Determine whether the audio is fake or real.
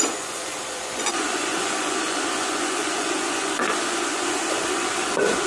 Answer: fake